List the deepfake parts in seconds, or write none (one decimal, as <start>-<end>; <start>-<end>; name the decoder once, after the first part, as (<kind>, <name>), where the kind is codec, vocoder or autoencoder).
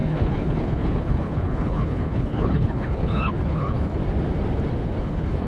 0.0-4.0 (codec, HILCodec); 5.0-5.5